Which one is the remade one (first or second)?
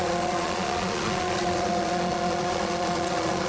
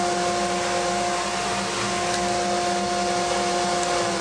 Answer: first